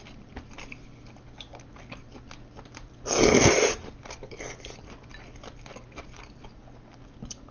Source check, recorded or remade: recorded